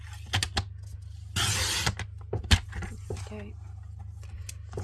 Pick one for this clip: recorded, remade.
recorded